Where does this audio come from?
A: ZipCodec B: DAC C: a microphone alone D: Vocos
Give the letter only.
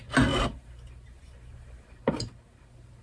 C